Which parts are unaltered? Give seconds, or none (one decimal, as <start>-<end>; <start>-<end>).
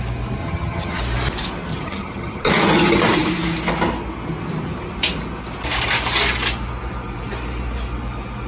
0.0-0.4; 1.0-1.7; 2.5-8.5